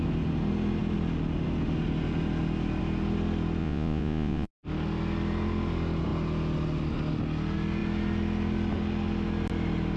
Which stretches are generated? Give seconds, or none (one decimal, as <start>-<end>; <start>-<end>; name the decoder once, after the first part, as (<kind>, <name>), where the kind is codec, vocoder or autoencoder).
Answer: 3.6-4.5 (vocoder, Vocos)